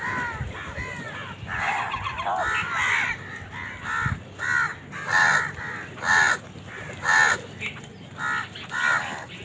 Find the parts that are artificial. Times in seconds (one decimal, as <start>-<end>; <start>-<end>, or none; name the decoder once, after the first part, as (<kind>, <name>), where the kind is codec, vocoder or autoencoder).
none